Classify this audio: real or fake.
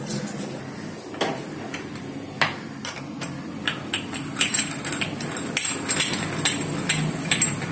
real